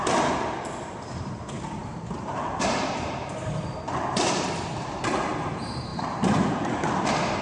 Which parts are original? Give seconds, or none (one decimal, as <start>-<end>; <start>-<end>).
0.0-0.8